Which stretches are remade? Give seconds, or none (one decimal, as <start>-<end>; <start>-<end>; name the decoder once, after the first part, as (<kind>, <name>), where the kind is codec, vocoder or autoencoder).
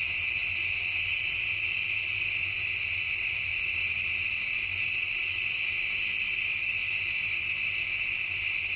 none